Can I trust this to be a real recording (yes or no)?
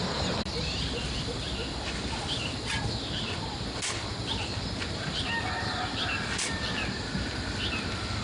yes